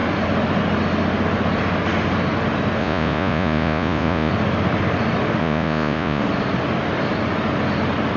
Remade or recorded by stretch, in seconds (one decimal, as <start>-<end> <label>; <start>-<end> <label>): 0.0-2.8 recorded; 2.8-4.3 remade; 4.3-5.4 recorded; 5.4-6.2 remade; 6.2-8.2 recorded

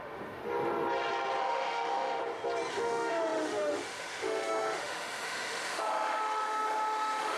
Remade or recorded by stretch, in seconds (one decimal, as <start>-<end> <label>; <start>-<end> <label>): 0.0-0.4 remade; 0.4-1.4 recorded; 1.4-2.2 remade; 2.2-2.7 recorded; 2.7-7.4 remade

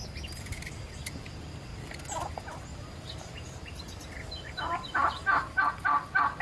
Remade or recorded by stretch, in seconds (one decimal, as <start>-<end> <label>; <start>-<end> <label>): 0.0-2.7 recorded; 2.7-5.7 remade; 5.7-6.4 recorded

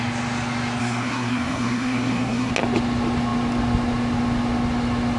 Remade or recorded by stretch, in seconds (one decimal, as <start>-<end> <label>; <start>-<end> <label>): 0.0-0.8 recorded; 0.8-2.5 remade; 2.5-5.2 recorded

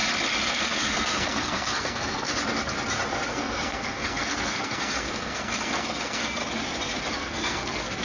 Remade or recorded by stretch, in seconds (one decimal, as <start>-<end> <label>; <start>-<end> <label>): 0.0-0.5 recorded; 0.5-2.3 remade; 2.3-3.3 recorded; 3.3-6.4 remade; 6.4-7.1 recorded; 7.1-8.0 remade